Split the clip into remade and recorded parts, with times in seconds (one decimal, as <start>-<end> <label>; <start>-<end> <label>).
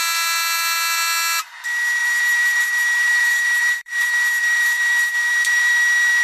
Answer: 0.0-2.0 recorded; 2.0-5.7 remade; 5.7-6.2 recorded